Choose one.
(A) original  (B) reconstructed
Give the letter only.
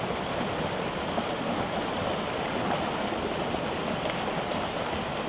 A